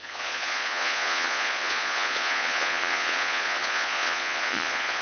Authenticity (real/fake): fake